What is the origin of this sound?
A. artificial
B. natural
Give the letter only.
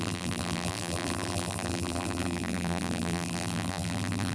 A